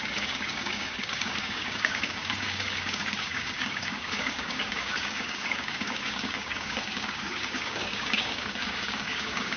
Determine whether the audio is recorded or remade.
remade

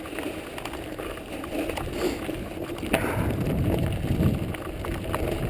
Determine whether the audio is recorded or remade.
recorded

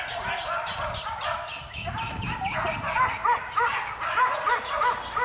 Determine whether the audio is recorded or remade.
recorded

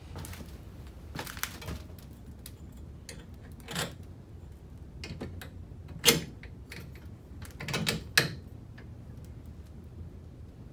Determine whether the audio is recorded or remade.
recorded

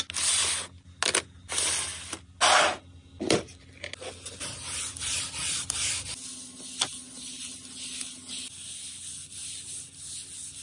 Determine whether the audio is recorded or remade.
recorded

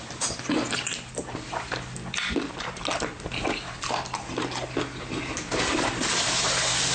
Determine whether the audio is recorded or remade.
recorded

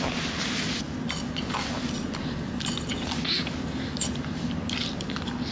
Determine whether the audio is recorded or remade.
recorded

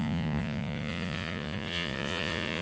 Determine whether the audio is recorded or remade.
remade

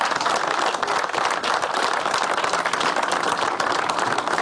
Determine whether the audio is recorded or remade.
recorded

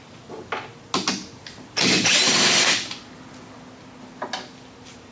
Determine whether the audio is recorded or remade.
recorded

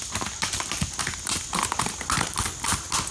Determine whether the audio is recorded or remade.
recorded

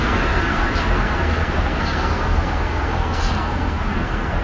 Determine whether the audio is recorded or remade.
remade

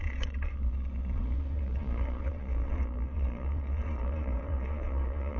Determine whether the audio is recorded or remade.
remade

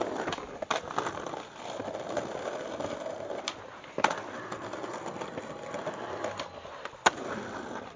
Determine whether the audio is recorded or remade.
recorded